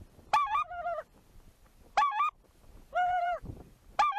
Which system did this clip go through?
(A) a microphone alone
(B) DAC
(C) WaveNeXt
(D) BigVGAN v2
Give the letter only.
D